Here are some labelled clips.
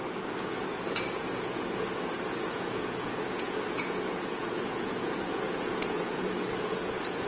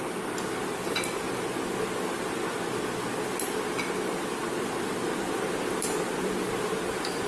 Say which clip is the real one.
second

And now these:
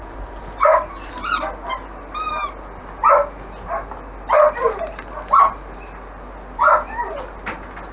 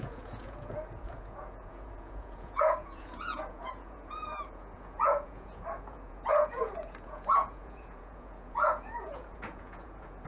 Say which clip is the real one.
first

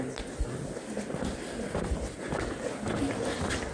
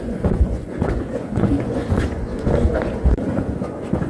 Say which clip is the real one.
first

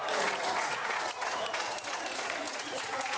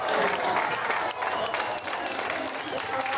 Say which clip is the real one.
second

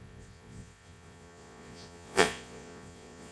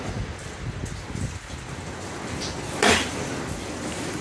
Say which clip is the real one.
second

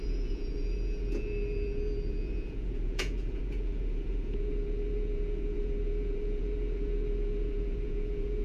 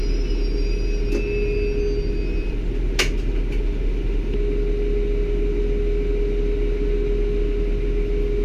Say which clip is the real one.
second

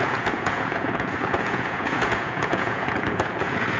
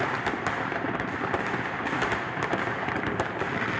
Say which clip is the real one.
second